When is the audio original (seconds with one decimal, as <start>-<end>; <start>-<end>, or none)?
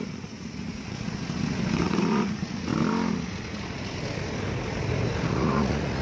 1.2-1.8; 2.7-5.3